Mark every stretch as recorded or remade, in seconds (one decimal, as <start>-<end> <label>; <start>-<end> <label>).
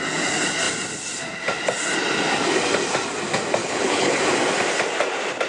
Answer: 0.0-3.6 recorded; 3.6-4.2 remade; 4.2-5.5 recorded